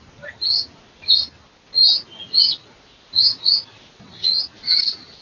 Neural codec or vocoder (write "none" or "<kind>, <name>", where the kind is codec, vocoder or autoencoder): none